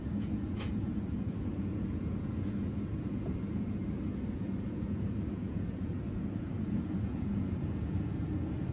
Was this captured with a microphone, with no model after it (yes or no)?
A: no